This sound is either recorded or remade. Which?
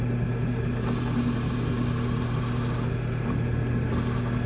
recorded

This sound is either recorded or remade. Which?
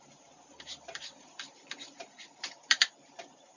remade